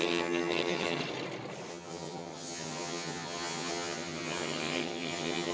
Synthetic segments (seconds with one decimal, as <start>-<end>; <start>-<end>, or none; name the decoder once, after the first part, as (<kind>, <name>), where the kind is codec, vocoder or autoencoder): 0.0-1.0 (vocoder, HiFi-GAN); 1.7-5.5